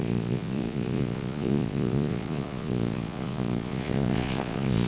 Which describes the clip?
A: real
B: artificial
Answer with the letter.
B